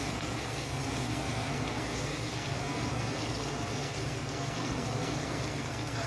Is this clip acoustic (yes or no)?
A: no